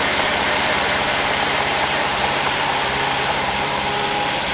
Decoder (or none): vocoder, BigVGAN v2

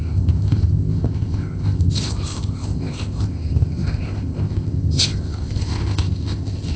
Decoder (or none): codec, ZipCodec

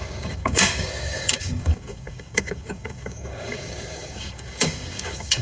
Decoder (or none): codec, DAC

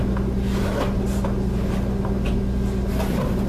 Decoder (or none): none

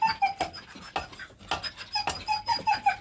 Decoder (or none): none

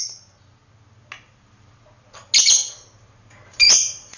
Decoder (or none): none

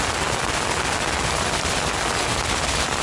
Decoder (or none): none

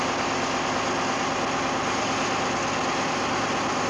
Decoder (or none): none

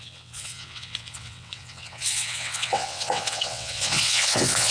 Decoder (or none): vocoder, WaveNeXt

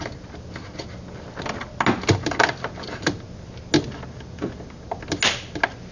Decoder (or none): none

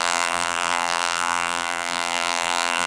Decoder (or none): vocoder, BigVGAN v2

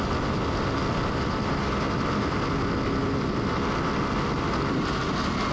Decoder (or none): none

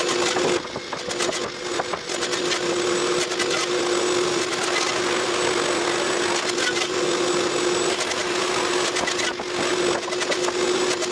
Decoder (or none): none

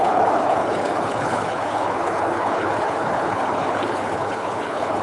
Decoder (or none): codec, HILCodec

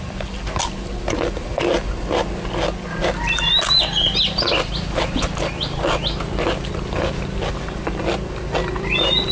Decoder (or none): none